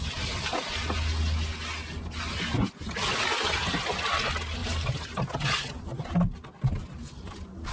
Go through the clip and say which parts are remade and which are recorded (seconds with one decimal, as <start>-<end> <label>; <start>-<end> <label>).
0.0-4.6 recorded; 4.6-5.2 remade; 5.2-7.7 recorded